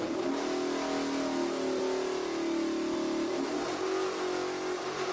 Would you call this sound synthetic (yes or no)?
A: no